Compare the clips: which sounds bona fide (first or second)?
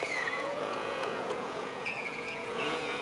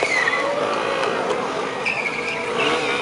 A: second